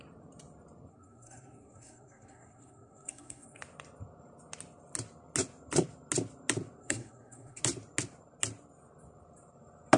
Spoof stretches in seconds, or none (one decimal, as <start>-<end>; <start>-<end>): 0.9-3.6; 6.8-7.6